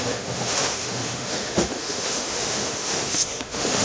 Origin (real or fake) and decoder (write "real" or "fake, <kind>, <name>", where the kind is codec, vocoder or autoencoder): fake, autoencoder, DAC-VAE